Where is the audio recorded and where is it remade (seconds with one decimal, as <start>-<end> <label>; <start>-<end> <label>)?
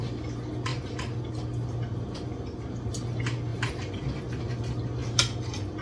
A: 0.0-5.8 recorded